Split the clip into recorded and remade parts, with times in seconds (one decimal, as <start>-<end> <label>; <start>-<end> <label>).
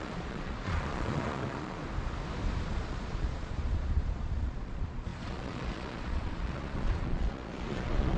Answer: 0.0-1.8 remade; 1.8-2.6 recorded; 2.6-8.2 remade